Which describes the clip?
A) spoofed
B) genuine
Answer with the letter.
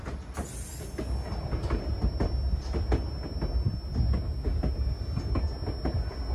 B